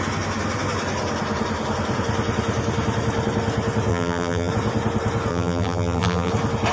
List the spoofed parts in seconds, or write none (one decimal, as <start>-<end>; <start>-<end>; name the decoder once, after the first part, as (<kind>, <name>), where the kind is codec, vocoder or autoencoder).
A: 3.9-4.5 (vocoder, BigVGAN v2); 5.3-6.3

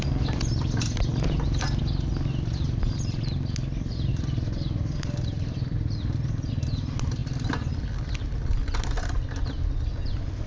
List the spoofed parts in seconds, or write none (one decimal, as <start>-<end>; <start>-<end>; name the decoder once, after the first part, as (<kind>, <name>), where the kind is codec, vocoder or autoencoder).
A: 4.1-6.5 (vocoder, BigVGAN v2); 7.2-8.2

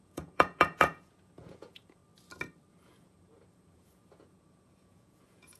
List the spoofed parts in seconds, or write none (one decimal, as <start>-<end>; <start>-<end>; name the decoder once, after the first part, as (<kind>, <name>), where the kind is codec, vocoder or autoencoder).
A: 0.0-2.0 (vocoder, Vocos); 2.7-5.6

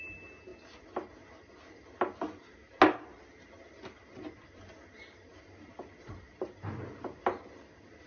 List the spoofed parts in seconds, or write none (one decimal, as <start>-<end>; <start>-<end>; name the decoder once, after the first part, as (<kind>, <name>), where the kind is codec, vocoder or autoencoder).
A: none

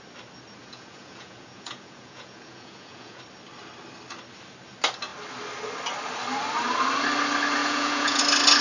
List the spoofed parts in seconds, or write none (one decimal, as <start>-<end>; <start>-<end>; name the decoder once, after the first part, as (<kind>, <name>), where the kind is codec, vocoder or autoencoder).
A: 0.6-3.2 (vocoder, Vocos); 7.6-8.2

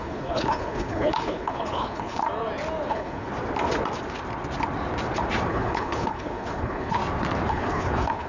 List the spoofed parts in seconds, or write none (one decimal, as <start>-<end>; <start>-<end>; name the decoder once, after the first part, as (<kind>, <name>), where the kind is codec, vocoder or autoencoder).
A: 0.0-2.2 (codec, HILCodec); 2.9-3.3; 5.5-7.0; 7.5-8.3

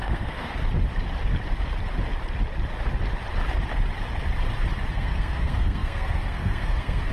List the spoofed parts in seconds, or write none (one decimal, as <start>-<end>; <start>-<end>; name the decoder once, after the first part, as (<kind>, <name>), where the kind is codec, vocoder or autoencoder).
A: 0.0-0.6 (codec, SNAC); 4.9-7.1